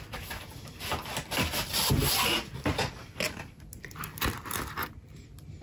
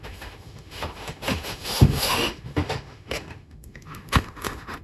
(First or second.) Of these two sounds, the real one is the first